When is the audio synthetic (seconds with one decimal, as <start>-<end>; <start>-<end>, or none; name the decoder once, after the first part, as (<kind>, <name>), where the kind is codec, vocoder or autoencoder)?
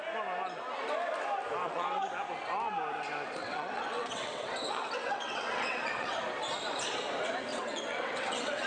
1.6-2.1 (vocoder, WaveNeXt); 3.4-6.2; 7.5-8.7